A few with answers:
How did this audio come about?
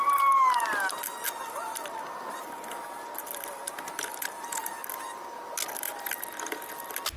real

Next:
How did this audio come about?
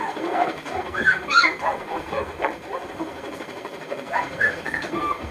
fake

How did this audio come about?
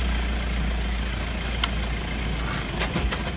real